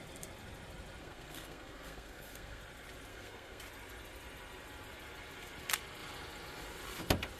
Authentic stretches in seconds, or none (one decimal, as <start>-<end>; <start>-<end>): 0.0-1.0; 2.6-3.1; 3.6-7.4